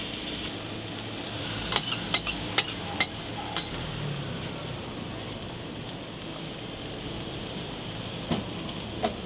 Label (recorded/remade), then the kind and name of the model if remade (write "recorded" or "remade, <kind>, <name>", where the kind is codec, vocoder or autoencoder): recorded